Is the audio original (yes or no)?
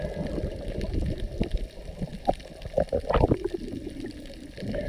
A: yes